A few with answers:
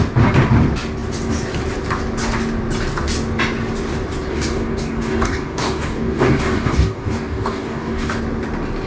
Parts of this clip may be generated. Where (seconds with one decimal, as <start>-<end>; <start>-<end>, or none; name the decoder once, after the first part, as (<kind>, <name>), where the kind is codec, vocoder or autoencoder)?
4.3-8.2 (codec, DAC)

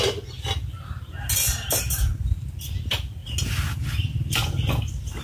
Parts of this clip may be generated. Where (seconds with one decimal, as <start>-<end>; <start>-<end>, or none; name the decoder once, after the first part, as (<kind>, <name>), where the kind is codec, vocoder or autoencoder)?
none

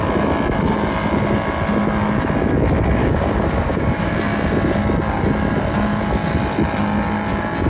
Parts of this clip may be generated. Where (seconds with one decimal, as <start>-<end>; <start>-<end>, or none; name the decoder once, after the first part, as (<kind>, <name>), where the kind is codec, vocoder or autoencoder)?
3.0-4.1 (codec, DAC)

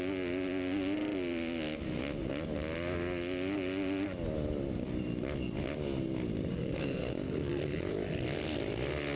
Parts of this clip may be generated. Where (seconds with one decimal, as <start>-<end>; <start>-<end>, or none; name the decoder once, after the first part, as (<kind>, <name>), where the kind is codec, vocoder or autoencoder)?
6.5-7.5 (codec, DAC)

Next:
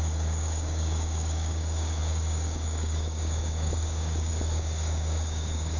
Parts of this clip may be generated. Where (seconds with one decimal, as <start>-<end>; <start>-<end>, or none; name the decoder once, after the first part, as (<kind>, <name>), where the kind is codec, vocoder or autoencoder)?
0.0-5.8 (codec, DAC)